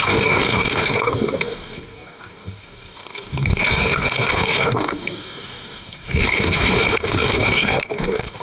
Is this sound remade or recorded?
remade